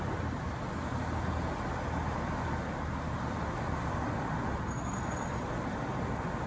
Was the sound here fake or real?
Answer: real